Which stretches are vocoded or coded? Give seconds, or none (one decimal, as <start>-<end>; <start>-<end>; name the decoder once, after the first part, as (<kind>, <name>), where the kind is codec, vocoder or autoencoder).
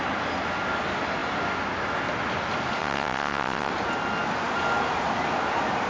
2.8-3.7 (vocoder, WaveNeXt)